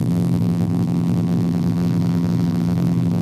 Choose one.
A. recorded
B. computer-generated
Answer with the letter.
B